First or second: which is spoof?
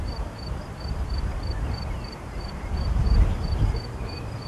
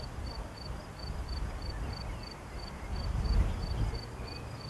first